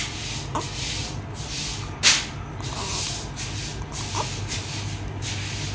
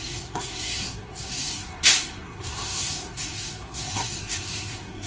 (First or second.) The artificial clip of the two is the second